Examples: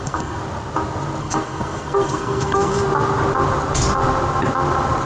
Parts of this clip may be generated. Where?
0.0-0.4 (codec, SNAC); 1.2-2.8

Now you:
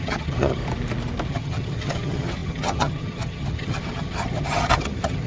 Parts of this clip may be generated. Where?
0.0-0.6 (vocoder, HiFi-GAN); 1.3-5.3

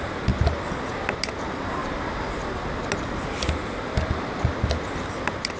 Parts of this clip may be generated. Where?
none

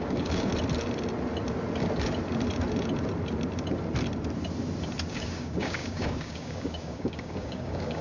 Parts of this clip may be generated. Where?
0.0-0.5 (codec, DAC); 5.1-8.0

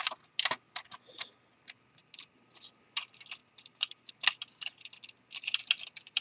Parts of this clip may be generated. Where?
2.0-2.5 (vocoder, BigVGAN v2); 3.4-4.1

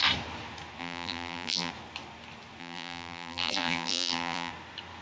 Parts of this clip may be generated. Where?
0.8-1.7 (vocoder, BigVGAN v2); 2.6-4.5

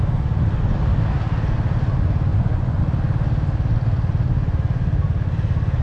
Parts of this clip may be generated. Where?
2.3-2.8 (vocoder, Vocos)

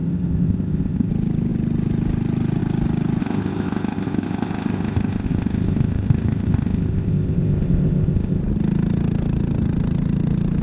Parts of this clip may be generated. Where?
0.0-1.1 (codec, ZipCodec); 3.2-8.4